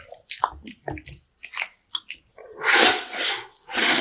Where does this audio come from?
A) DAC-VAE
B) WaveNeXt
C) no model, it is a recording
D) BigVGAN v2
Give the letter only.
C